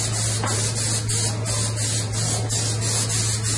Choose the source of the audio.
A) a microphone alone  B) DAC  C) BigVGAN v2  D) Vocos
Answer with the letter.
A